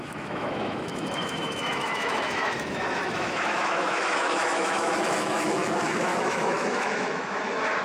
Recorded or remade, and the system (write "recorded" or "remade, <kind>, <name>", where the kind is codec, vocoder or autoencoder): remade, autoencoder, DAC-VAE